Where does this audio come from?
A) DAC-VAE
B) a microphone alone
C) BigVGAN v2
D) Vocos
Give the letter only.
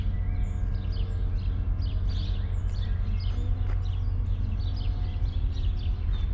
B